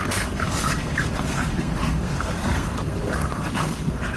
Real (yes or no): no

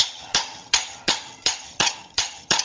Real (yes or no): no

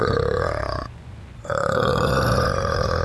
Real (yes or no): no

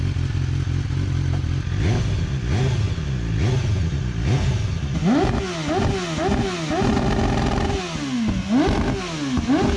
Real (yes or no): yes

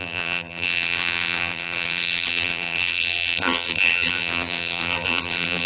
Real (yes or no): no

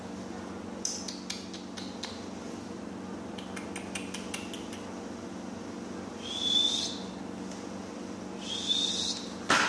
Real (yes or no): yes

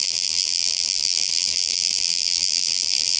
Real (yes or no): no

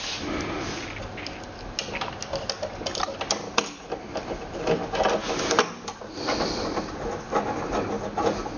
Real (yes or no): yes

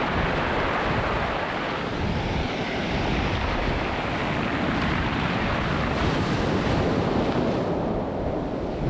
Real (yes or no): yes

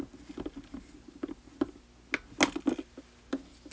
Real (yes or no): yes